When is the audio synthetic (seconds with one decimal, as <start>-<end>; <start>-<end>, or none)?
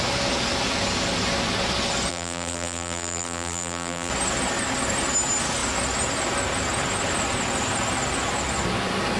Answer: 2.1-4.1